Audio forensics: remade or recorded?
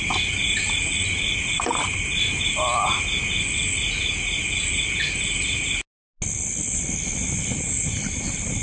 recorded